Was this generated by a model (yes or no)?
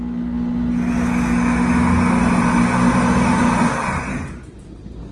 no